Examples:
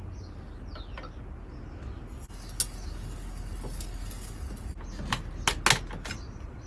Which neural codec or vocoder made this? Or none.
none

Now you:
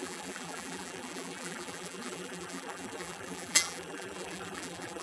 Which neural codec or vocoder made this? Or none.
vocoder, BigVGAN v2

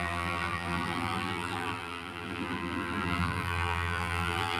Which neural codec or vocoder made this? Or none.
vocoder, BigVGAN v2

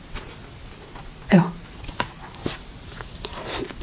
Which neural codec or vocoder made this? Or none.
none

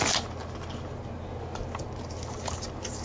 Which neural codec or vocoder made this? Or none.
none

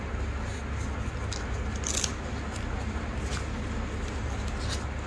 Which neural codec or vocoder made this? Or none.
none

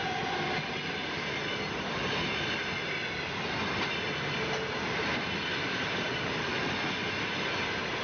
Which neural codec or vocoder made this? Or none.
none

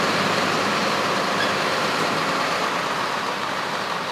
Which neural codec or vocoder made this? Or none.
vocoder, BigVGAN v2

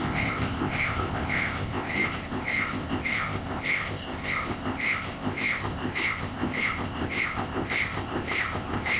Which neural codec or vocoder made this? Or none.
codec, ZipCodec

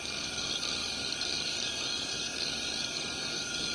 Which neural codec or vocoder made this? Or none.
codec, DAC